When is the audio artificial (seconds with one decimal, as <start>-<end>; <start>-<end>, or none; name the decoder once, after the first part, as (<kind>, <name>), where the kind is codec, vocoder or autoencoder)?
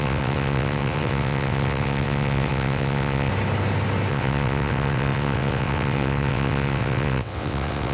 0.0-3.3 (vocoder, WaveNeXt); 4.1-7.9